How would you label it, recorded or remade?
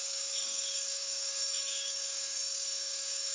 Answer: remade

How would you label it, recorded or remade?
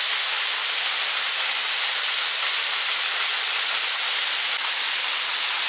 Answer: recorded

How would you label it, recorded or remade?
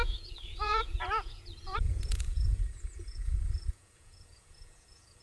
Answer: remade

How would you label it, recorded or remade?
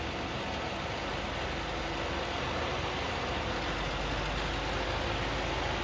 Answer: recorded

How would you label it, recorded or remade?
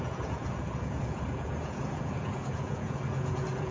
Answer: remade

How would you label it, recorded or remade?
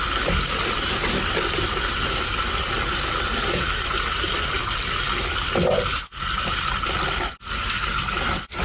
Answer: recorded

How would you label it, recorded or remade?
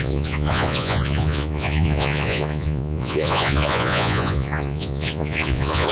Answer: remade